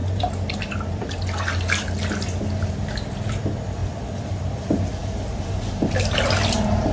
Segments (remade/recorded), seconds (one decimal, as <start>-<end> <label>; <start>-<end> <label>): 0.0-1.1 remade; 1.1-6.9 recorded